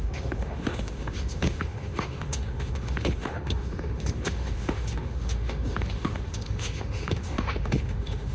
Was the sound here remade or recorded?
remade